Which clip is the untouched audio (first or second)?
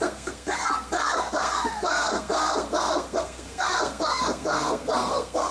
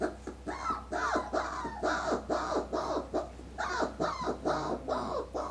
second